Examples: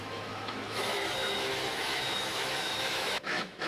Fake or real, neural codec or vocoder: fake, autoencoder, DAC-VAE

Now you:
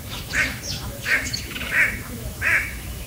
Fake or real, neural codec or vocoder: fake, autoencoder, DAC-VAE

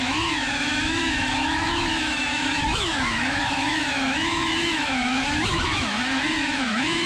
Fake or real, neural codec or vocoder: fake, autoencoder, DAC-VAE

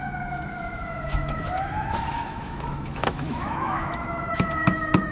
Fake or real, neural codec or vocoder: fake, autoencoder, DAC-VAE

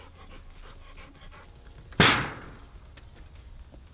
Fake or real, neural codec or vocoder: real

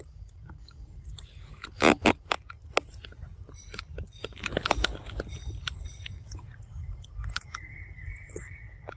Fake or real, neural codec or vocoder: real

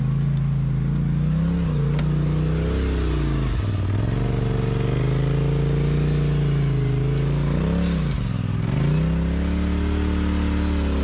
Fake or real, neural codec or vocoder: real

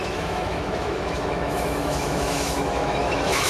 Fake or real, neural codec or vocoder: fake, autoencoder, DAC-VAE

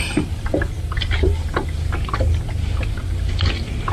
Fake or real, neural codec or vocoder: real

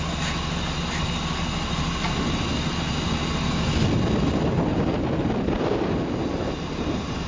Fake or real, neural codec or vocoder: real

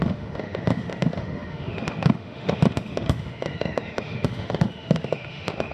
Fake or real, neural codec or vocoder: fake, autoencoder, DAC-VAE